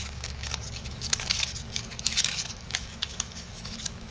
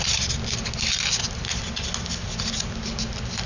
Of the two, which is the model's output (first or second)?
first